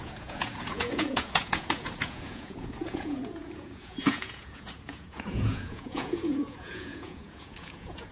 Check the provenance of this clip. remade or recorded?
remade